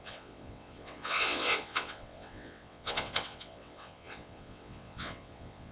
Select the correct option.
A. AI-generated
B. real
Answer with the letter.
A